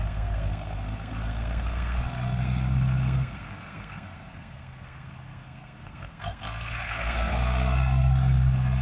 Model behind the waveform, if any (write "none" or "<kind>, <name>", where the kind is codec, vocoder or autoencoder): codec, SNAC